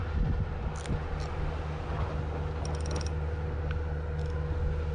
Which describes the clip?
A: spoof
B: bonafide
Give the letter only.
B